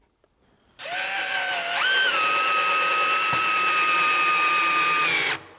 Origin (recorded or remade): recorded